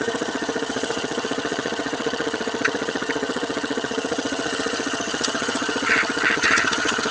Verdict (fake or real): fake